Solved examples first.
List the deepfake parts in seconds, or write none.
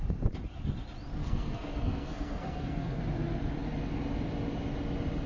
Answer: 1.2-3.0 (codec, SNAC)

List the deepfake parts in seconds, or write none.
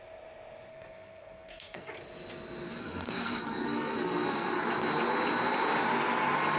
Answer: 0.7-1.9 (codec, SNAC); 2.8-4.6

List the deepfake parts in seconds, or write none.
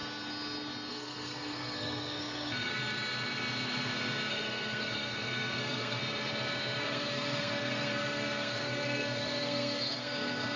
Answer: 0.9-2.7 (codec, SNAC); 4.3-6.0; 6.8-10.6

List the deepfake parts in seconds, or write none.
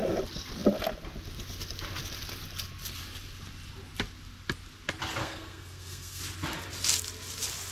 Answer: 5.2-6.2 (codec, SNAC)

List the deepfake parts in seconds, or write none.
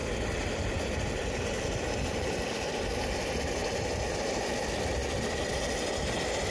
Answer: none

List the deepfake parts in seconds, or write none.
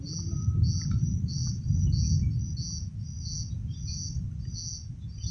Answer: none